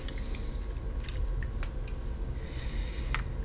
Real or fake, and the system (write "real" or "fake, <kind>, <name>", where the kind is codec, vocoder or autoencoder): real